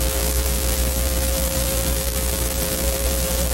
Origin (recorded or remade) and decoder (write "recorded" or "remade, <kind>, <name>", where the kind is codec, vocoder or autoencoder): remade, vocoder, BigVGAN v2